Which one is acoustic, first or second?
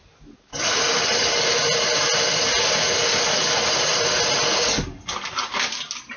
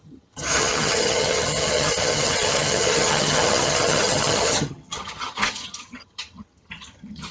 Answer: first